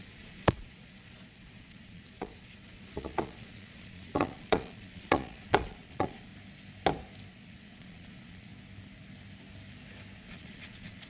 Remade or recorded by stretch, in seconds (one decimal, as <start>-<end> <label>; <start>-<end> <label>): 0.0-6.3 remade; 6.3-7.3 recorded; 7.3-8.5 remade; 8.5-10.2 recorded; 10.2-11.1 remade